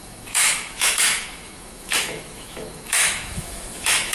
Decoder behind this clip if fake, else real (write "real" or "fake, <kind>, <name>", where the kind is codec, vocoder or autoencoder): fake, autoencoder, DAC-VAE